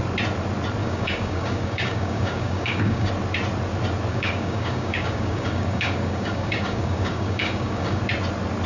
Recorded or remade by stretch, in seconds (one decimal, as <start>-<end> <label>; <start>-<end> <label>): 0.0-0.8 recorded; 0.8-3.1 remade; 3.1-4.1 recorded; 4.1-8.0 remade; 8.0-8.7 recorded